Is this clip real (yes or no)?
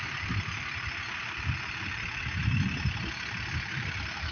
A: no